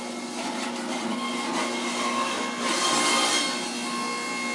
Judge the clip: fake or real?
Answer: real